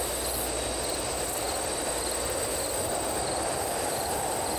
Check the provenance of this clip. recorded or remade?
recorded